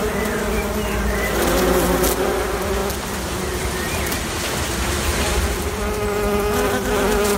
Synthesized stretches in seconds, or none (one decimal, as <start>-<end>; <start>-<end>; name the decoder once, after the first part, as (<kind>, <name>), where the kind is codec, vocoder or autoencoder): none